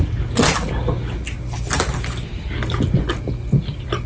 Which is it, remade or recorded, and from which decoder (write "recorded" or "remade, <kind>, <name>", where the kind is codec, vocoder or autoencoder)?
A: recorded